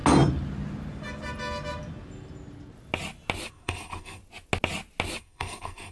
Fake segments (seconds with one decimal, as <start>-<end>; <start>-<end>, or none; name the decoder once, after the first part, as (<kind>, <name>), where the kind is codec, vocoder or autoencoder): 3.5-4.2 (codec, SNAC); 5.2-5.9